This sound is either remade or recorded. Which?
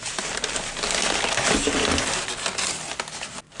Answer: recorded